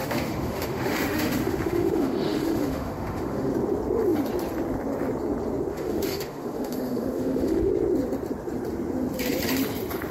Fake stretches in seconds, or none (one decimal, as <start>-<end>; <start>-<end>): 0.0-3.5; 5.7-7.7